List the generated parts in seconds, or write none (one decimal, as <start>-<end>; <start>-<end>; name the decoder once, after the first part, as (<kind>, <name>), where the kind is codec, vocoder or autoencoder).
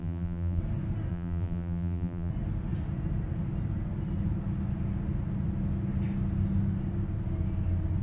0.0-0.6 (vocoder, BigVGAN v2); 1.1-2.3